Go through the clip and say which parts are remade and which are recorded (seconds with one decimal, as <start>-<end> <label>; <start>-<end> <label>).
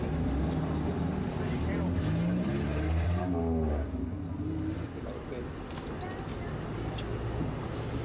0.0-2.3 recorded; 2.3-3.2 remade; 3.2-8.0 recorded